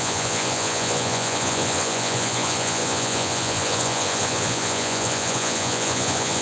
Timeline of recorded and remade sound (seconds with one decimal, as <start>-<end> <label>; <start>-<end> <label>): 0.0-6.4 remade